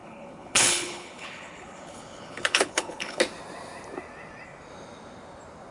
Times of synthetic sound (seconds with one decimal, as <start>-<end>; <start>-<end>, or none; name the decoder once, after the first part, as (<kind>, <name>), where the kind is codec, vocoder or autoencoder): 0.0-3.2 (codec, HILCodec)